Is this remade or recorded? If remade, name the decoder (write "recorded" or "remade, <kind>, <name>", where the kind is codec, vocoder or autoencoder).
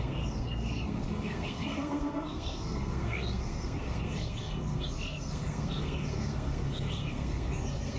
remade, codec, SNAC